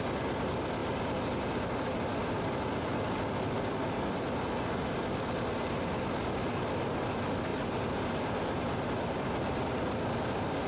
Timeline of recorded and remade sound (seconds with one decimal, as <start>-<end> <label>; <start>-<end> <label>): 0.0-7.5 recorded; 7.5-8.9 remade; 8.9-10.7 recorded